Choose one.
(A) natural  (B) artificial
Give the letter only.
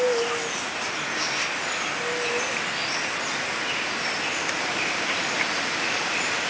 A